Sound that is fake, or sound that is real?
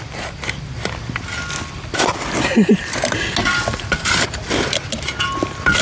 real